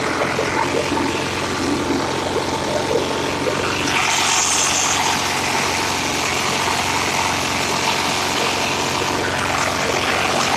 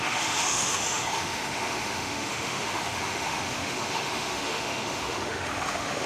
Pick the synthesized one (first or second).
second